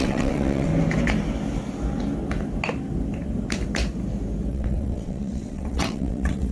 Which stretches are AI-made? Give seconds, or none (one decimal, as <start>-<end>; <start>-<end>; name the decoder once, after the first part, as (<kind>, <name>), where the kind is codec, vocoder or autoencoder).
0.0-0.7 (vocoder, WaveNeXt); 4.5-6.5